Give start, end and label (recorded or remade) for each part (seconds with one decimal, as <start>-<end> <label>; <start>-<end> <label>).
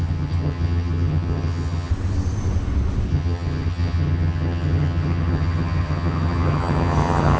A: 0.0-1.9 remade; 1.9-3.1 recorded; 3.1-7.4 remade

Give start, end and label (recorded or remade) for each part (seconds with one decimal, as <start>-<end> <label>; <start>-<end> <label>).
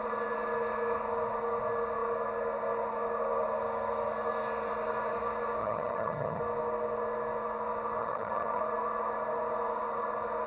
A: 0.0-5.6 recorded; 5.6-6.4 remade; 6.4-8.0 recorded; 8.0-8.6 remade; 8.6-10.5 recorded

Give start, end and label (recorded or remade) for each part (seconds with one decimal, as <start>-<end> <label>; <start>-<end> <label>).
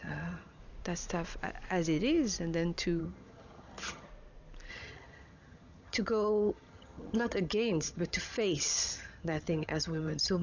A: 0.0-0.6 remade; 0.6-3.0 recorded; 3.0-4.1 remade; 4.1-4.7 recorded; 4.7-10.4 remade